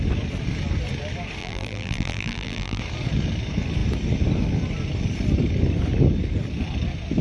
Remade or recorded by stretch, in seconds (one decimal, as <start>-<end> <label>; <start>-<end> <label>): 0.0-1.4 recorded; 1.4-2.8 remade; 2.8-7.2 recorded

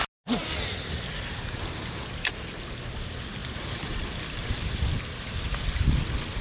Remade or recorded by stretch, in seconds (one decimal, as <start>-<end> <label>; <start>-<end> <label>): 0.0-6.4 recorded